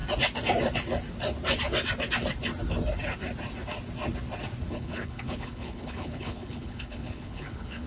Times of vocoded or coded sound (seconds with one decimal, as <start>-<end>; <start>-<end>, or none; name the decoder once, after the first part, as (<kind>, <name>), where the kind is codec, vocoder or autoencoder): 4.7-7.9 (codec, HILCodec)